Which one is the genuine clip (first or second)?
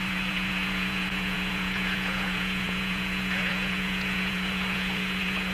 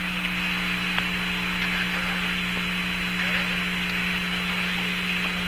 second